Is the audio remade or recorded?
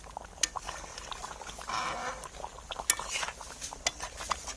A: recorded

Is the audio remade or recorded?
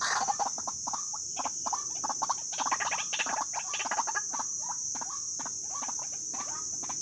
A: recorded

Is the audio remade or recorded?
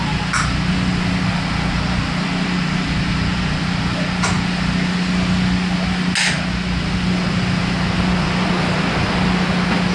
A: recorded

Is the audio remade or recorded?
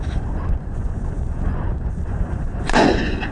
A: remade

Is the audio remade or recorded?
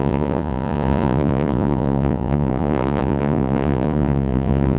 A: remade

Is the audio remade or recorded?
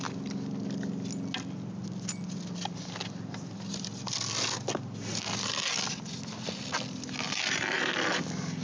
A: recorded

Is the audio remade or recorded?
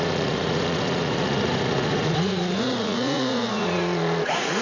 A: remade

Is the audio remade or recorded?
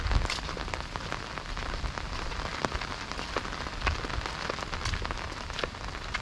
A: recorded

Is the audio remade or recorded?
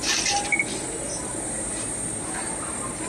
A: recorded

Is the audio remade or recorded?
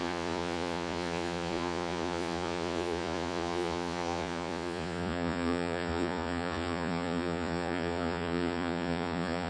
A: remade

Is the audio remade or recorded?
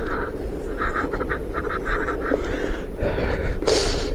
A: recorded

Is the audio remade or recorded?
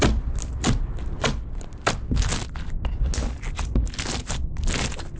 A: recorded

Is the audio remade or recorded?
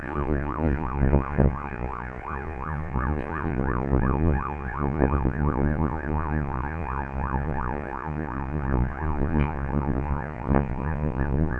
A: remade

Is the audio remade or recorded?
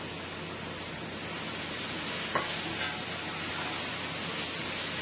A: recorded